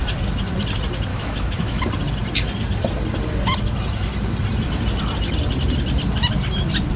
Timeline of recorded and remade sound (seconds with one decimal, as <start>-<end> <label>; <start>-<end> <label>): 0.0-1.1 recorded; 1.1-1.8 remade; 1.8-7.0 recorded